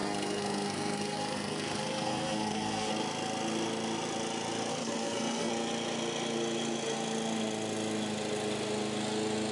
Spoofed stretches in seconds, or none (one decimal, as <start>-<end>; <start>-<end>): 0.0-2.9; 4.7-5.5